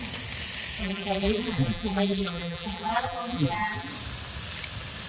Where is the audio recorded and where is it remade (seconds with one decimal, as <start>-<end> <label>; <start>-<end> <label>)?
0.0-0.8 recorded; 0.8-3.9 remade; 3.9-5.1 recorded